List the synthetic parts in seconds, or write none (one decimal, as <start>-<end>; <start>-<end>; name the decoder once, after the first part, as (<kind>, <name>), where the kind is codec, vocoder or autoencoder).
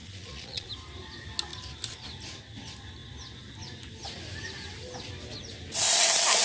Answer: 0.0-0.7 (vocoder, Vocos)